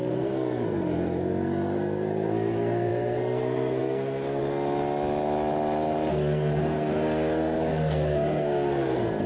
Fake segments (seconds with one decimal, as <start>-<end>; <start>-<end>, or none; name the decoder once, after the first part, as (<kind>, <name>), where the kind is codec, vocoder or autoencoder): 0.0-4.4 (codec, SNAC); 6.1-9.3